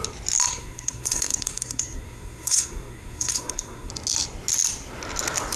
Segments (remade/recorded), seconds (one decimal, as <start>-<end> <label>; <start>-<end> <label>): 0.0-0.5 recorded; 0.5-3.9 remade; 3.9-5.6 recorded